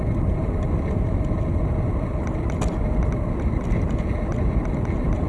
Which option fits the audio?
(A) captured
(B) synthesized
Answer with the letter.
A